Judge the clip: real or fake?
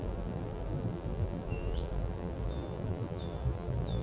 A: fake